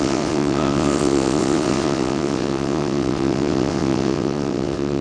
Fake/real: fake